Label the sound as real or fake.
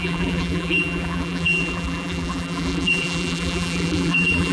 fake